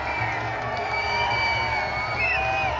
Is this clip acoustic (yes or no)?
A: yes